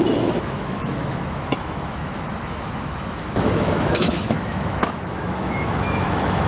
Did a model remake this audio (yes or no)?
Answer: yes